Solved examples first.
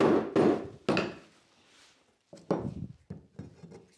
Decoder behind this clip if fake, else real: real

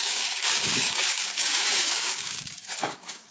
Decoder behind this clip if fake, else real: fake, codec, DAC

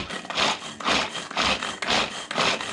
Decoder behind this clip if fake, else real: real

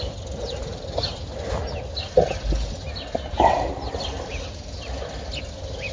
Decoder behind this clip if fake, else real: real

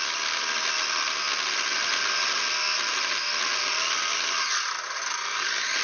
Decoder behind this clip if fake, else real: real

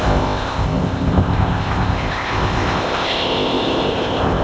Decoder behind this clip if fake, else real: fake, codec, ZipCodec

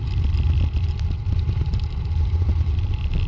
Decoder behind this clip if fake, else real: real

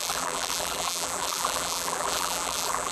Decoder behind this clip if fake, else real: fake, vocoder, BigVGAN v2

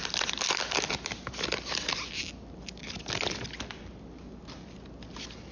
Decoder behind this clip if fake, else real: real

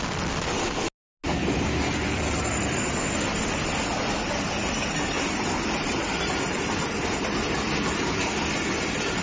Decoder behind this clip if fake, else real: real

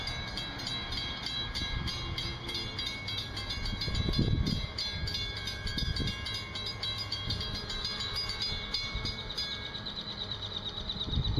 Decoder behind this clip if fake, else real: fake, vocoder, BigVGAN v2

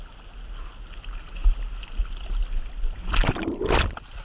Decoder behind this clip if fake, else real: real